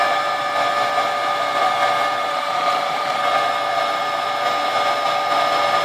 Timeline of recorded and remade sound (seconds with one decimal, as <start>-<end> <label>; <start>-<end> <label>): 0.0-2.3 recorded; 2.3-3.2 remade; 3.2-5.8 recorded